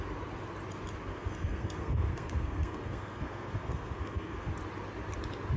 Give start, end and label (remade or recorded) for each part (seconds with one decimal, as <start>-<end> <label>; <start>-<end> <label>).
0.0-1.1 recorded; 1.1-4.5 remade; 4.5-5.6 recorded